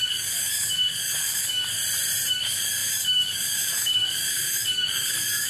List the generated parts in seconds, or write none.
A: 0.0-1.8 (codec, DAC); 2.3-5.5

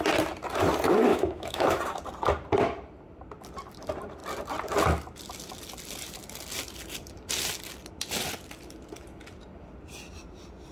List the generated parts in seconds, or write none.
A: 1.1-1.8 (autoencoder, DAC-VAE)

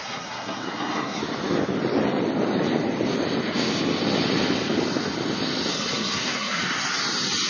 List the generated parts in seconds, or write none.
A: 0.0-1.2 (codec, SNAC); 5.7-6.6

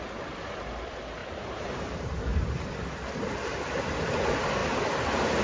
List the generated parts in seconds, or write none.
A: 1.2-2.7 (vocoder, BigVGAN v2)

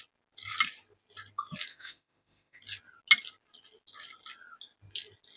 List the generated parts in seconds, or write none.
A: 1.7-2.6 (autoencoder, DAC-VAE)